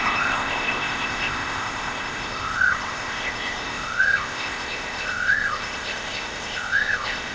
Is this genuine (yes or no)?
no